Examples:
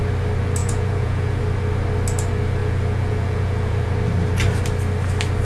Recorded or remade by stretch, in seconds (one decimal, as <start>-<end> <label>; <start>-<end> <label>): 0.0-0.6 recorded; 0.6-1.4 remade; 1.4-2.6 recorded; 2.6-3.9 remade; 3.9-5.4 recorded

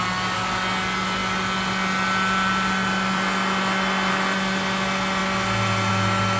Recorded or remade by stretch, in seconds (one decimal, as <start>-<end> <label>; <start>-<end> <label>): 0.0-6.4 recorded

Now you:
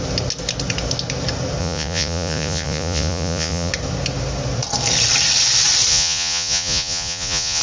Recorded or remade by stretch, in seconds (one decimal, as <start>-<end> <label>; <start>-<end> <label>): 0.0-1.6 recorded; 1.6-3.7 remade; 3.7-5.9 recorded; 5.9-7.6 remade

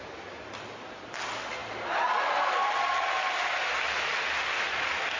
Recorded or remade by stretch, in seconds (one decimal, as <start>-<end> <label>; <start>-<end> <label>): 0.0-5.2 recorded

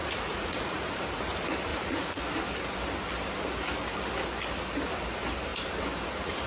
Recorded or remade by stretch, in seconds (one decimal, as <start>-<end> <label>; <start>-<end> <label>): 0.0-0.9 remade; 0.9-1.7 recorded; 1.7-2.2 remade; 2.2-6.5 recorded

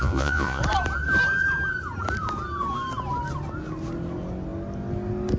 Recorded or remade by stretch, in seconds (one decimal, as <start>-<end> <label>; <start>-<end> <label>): 0.0-0.6 remade; 0.6-5.4 recorded

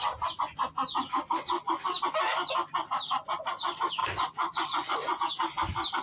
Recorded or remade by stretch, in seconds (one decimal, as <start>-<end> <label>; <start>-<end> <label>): 0.0-0.6 recorded; 0.6-1.1 remade; 1.1-4.0 recorded; 4.0-5.2 remade; 5.2-6.0 recorded

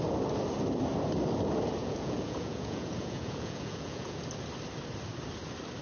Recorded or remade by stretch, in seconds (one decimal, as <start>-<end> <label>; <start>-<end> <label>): 0.0-1.8 recorded; 1.8-4.3 remade; 4.3-5.8 recorded